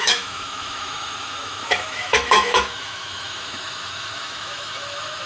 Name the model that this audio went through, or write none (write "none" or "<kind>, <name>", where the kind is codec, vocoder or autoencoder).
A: autoencoder, DAC-VAE